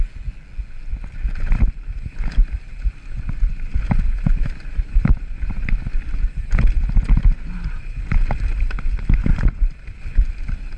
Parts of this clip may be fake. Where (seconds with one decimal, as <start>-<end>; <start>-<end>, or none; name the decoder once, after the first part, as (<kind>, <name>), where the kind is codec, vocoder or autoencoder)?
none